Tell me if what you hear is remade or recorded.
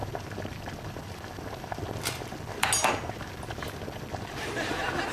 recorded